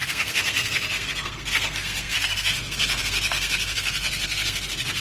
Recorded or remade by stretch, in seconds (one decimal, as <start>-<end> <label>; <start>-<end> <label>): 0.0-5.0 remade